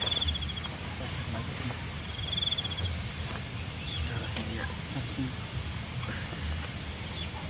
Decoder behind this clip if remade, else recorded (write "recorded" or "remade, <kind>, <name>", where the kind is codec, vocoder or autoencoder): recorded